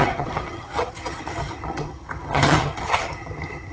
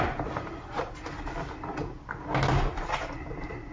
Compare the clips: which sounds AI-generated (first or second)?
first